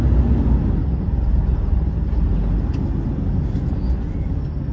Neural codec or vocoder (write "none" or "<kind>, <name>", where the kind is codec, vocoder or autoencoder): none